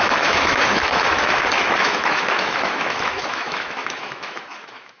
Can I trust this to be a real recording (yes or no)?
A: no